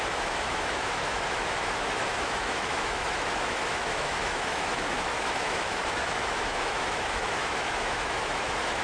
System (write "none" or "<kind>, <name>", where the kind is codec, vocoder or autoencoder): autoencoder, DAC-VAE